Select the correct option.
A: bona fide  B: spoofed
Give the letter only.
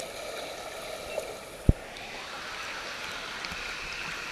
A